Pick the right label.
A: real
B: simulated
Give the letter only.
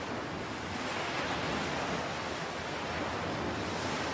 A